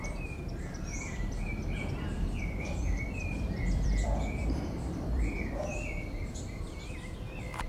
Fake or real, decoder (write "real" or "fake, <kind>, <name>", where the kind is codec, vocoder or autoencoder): fake, vocoder, BigVGAN v2